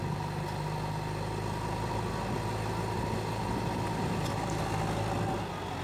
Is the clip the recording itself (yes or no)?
yes